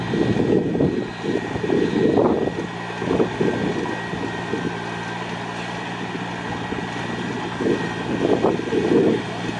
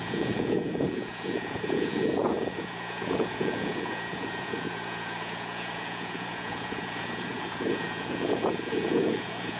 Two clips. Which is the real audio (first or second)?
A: first